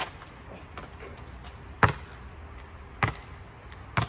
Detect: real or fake real